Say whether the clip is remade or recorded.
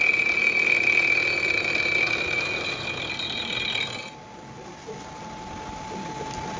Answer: recorded